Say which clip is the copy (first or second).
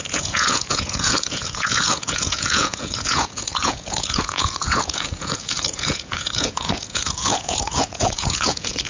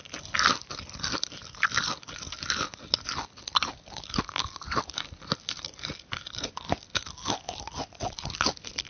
first